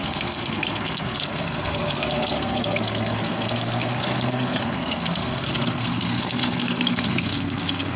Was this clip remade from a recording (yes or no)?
yes